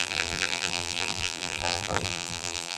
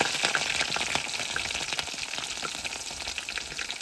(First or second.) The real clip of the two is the second